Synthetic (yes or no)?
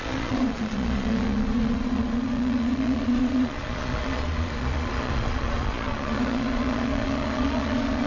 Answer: yes